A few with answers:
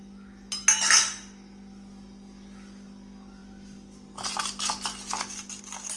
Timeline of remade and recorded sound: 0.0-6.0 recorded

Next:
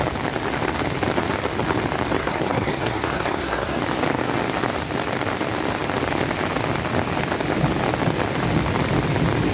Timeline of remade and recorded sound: 0.0-2.2 recorded; 2.2-3.8 remade; 3.8-9.5 recorded